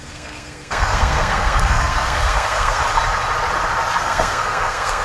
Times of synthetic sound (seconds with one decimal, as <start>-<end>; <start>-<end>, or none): 0.0-2.8; 4.0-5.0